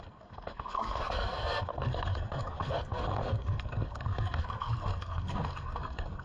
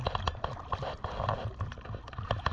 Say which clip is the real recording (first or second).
second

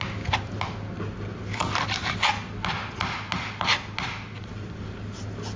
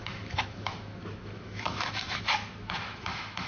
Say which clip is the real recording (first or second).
first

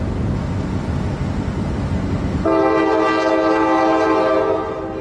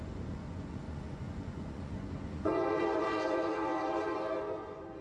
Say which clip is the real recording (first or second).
first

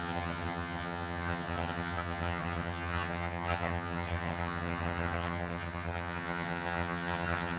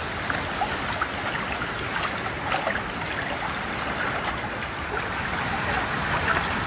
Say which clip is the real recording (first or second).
second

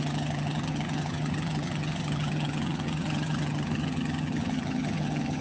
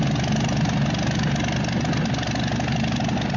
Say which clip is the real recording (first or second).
second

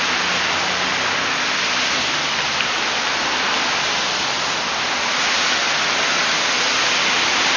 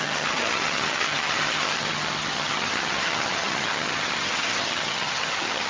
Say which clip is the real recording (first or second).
first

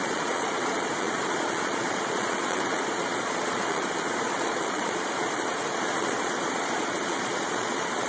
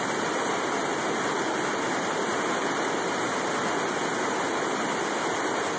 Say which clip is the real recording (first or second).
second